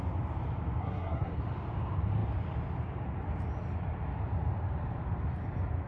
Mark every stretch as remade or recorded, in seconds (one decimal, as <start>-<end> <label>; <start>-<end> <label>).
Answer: 0.0-0.8 recorded; 0.8-1.4 remade; 1.4-5.9 recorded